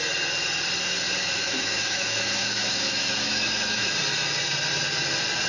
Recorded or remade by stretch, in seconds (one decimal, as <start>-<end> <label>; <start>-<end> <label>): 0.0-1.4 recorded; 1.4-3.9 remade; 3.9-5.5 recorded